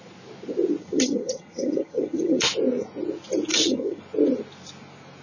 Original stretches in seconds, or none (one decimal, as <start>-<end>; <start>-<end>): 0.0-0.8; 2.4-3.5; 4.0-5.2